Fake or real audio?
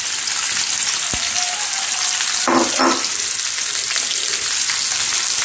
real